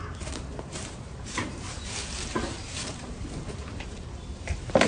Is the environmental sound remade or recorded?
remade